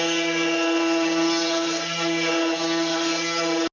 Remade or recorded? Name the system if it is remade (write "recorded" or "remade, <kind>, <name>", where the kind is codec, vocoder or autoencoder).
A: recorded